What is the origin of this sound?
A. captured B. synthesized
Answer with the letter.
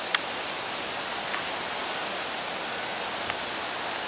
A